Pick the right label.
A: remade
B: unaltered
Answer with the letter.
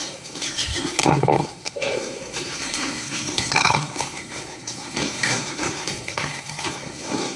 A